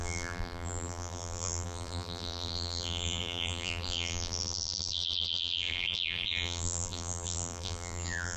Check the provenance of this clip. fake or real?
fake